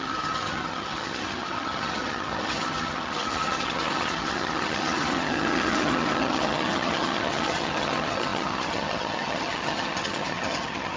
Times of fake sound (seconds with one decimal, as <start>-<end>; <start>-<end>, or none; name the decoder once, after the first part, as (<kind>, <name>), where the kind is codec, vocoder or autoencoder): 0.0-11.0 (vocoder, HiFi-GAN)